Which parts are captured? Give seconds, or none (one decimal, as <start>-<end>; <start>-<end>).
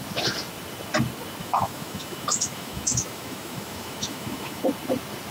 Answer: 0.0-1.4; 4.6-5.3